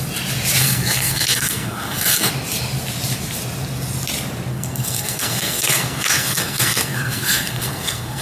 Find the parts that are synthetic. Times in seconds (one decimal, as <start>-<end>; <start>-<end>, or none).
0.6-2.3; 4.5-8.2